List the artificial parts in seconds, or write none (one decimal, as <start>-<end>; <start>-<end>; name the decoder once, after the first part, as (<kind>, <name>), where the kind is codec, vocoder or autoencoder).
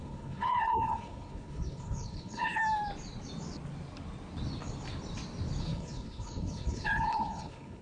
0.0-2.6 (codec, HILCodec); 5.6-7.8